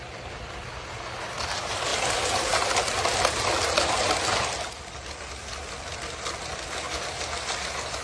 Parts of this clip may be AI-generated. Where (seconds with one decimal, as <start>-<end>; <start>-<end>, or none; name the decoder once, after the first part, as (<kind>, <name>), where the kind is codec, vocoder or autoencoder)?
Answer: none